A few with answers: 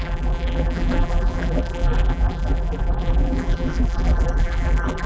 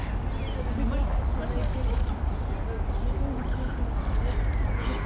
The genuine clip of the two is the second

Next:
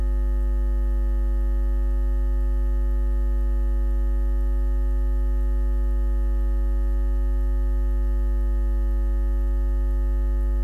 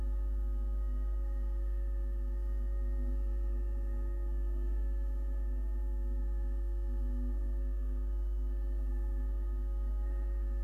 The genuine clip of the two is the first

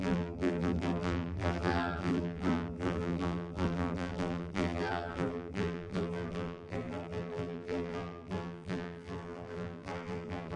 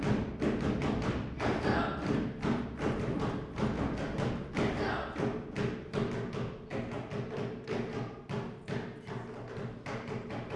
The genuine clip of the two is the second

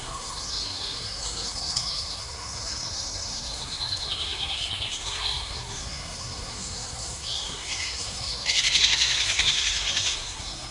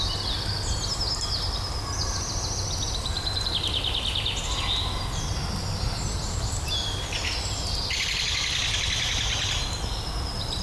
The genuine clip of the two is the second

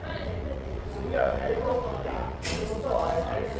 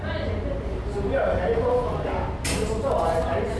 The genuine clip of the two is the second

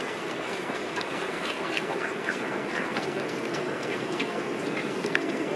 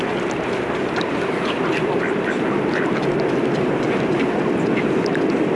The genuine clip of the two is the second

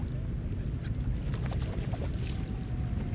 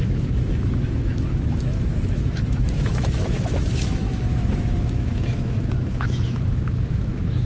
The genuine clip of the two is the first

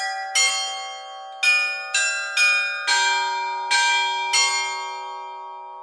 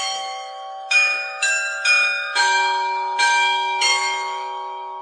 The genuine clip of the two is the first